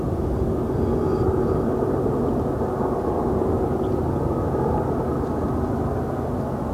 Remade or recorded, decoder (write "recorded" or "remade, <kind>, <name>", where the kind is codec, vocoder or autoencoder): recorded